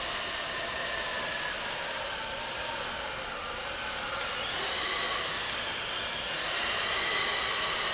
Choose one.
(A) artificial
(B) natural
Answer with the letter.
B